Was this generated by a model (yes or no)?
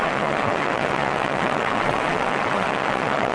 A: yes